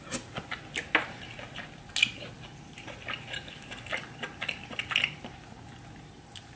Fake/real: real